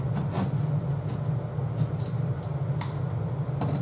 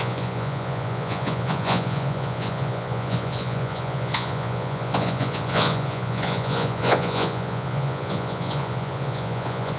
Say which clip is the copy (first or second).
second